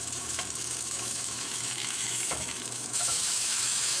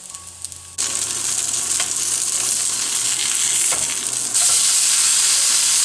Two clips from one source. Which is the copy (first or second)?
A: first